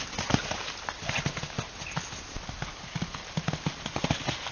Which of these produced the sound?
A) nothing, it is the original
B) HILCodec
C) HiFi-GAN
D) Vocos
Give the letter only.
A